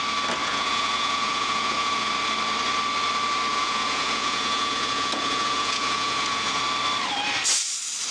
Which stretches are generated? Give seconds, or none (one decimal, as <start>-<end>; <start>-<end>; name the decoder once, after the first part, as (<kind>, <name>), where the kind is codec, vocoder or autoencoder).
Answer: 0.4-2.1 (vocoder, Vocos); 3.5-6.6